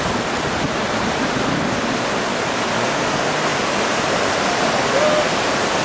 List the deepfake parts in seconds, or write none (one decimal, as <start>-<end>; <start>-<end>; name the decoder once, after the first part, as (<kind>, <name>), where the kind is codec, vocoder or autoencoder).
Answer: none

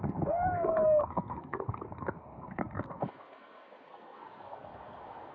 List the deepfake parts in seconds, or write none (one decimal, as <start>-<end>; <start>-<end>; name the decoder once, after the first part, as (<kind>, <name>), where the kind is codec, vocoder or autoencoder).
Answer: 0.0-5.3 (codec, SNAC)

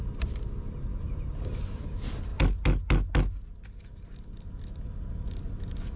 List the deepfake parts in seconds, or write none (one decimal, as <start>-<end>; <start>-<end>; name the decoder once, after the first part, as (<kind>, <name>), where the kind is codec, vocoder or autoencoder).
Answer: 0.9-1.8 (vocoder, BigVGAN v2)

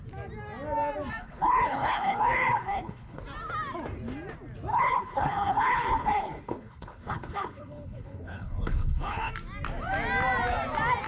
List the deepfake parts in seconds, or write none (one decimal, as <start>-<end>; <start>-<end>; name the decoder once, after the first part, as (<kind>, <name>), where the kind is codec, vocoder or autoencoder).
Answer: 1.2-3.2 (codec, HILCodec); 4.7-9.3

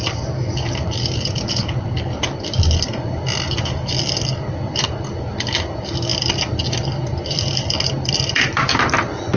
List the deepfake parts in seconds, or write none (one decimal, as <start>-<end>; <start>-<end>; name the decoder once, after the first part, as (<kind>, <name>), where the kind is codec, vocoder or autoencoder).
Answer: 6.1-8.6 (vocoder, BigVGAN v2)

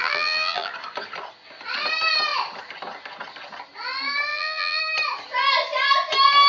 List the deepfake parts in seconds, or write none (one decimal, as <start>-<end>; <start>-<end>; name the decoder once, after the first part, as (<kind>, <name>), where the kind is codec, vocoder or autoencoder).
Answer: 0.0-0.7 (vocoder, BigVGAN v2); 4.3-4.8

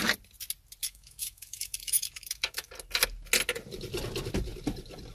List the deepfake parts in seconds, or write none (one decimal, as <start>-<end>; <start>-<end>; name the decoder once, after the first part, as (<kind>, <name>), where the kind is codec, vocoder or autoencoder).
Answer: 0.8-2.7 (autoencoder, DAC-VAE)